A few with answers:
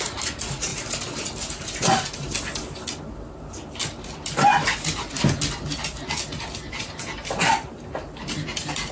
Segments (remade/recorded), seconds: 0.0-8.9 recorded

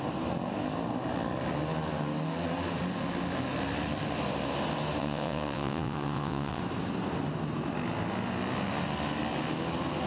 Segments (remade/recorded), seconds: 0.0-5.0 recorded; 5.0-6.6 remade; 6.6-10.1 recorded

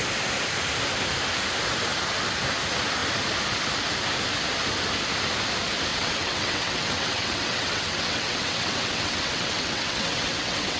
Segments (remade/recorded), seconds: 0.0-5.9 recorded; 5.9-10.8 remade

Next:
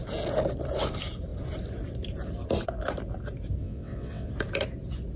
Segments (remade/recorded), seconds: 0.0-3.6 recorded; 3.6-4.3 remade; 4.3-5.2 recorded

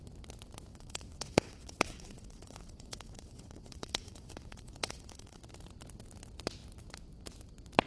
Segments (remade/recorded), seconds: 0.0-0.7 recorded; 0.7-5.4 remade; 5.4-7.9 recorded

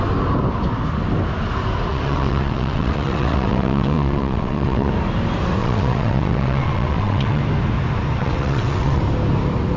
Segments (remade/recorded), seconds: 0.0-1.9 recorded; 1.9-4.9 remade; 4.9-5.6 recorded; 5.6-7.4 remade; 7.4-8.2 recorded; 8.2-9.0 remade; 9.0-9.8 recorded

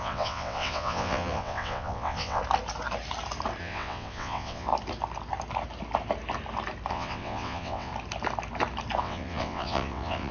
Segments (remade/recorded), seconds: 0.0-2.4 remade; 2.4-3.6 recorded; 3.6-4.7 remade; 4.7-6.9 recorded; 6.9-7.9 remade; 7.9-9.0 recorded; 9.0-10.3 remade

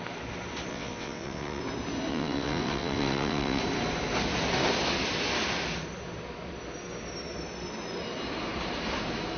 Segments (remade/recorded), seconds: 0.0-0.7 recorded; 0.7-1.6 remade; 1.6-2.1 recorded; 2.1-3.6 remade; 3.6-9.4 recorded